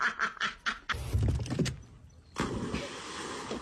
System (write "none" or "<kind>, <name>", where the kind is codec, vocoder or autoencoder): none